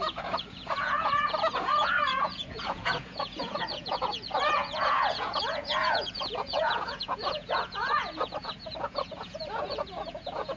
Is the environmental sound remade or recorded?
remade